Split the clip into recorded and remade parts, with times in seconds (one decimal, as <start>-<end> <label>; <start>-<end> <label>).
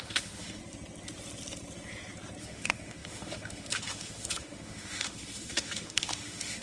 0.0-0.6 remade; 0.6-2.4 recorded; 2.4-6.6 remade